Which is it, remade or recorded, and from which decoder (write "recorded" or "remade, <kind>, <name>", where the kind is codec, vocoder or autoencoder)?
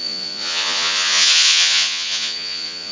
remade, vocoder, Vocos